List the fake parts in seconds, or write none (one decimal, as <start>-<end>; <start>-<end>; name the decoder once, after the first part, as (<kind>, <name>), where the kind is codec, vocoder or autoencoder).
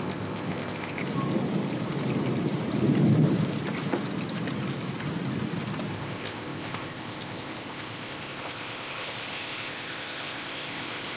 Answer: 0.0-1.0 (codec, ZipCodec); 5.9-11.2